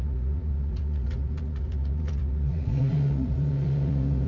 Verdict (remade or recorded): remade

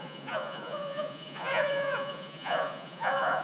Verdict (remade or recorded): remade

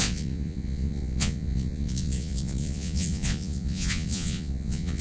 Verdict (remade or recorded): remade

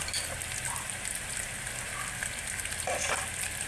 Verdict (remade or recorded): recorded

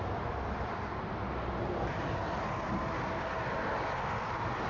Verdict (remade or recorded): recorded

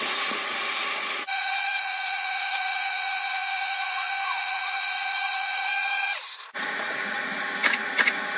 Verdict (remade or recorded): remade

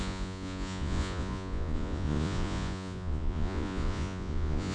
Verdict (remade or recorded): remade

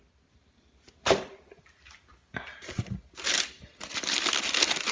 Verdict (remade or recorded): recorded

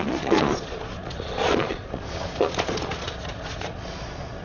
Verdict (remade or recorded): remade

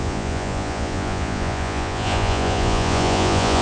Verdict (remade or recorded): remade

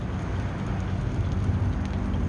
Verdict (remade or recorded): recorded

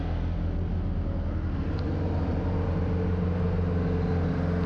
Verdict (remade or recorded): recorded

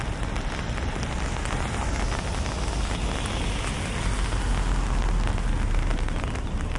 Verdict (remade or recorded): recorded